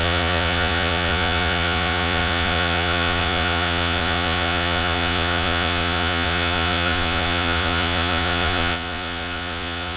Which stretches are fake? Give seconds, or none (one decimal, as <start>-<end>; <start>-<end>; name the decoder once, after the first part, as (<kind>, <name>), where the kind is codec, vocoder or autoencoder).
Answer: 0.0-10.0 (vocoder, Vocos)